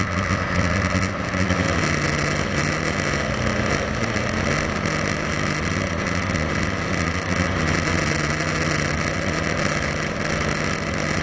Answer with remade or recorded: recorded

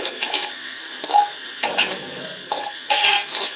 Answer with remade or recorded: remade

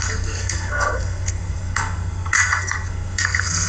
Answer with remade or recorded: remade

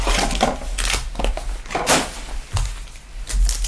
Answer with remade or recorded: recorded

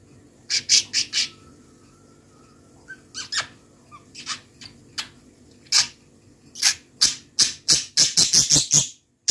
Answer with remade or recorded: recorded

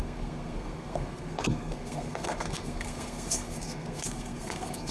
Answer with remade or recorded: remade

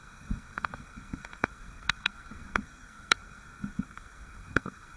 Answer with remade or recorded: remade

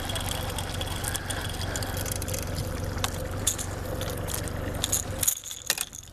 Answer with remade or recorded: recorded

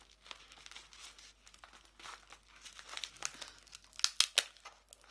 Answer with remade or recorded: recorded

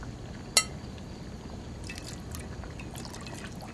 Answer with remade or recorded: recorded